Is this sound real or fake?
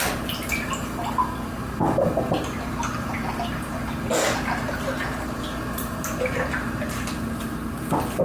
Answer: real